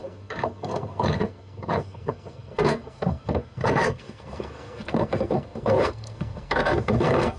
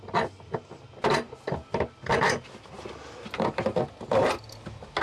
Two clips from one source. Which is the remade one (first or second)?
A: first